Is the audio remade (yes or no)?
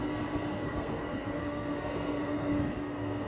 yes